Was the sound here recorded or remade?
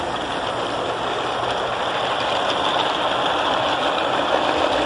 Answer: recorded